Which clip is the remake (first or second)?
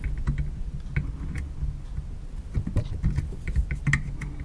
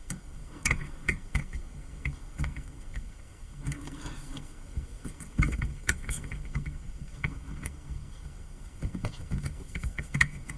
second